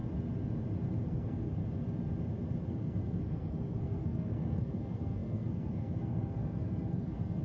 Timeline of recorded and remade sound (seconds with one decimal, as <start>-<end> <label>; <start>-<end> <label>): 0.0-1.0 recorded; 1.0-1.6 remade; 1.6-2.7 recorded; 2.7-7.4 remade